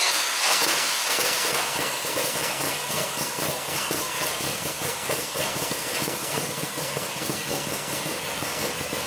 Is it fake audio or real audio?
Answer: fake